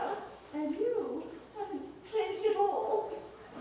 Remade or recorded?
remade